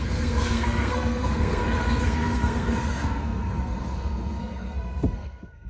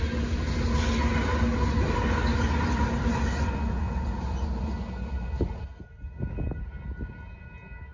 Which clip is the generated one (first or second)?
first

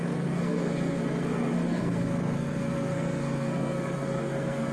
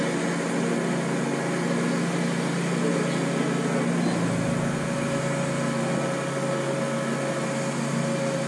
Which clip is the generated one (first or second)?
first